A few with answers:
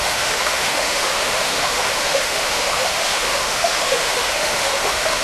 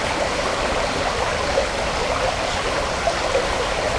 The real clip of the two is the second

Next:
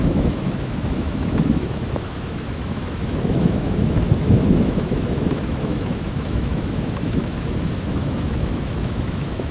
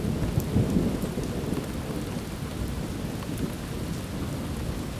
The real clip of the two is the second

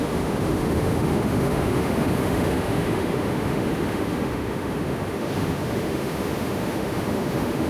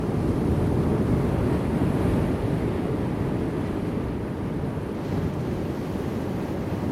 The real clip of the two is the second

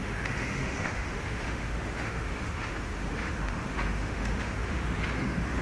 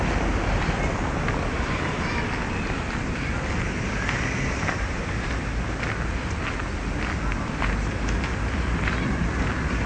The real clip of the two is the second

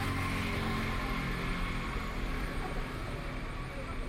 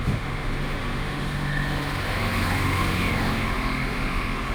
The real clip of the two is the first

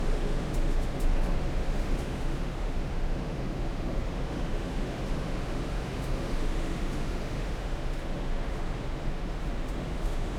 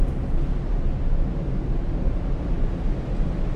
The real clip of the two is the second